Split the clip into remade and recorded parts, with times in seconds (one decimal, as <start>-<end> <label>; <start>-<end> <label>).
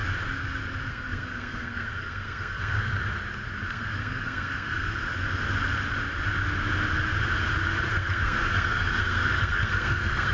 0.0-0.9 recorded; 0.9-2.9 remade; 2.9-3.7 recorded; 3.7-5.0 remade; 5.0-7.9 recorded; 7.9-10.3 remade